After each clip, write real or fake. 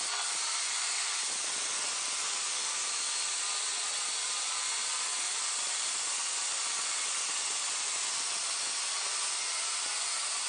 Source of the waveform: real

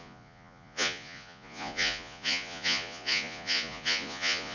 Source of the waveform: fake